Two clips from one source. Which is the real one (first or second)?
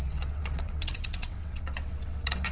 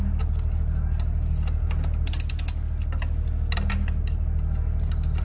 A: second